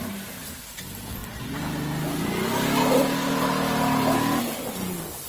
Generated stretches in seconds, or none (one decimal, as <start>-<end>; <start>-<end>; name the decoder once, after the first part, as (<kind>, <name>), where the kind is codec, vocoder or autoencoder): none